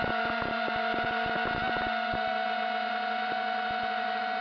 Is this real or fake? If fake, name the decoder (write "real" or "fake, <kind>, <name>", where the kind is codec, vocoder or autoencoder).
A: real